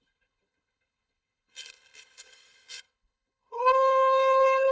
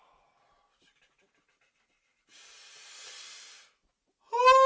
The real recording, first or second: second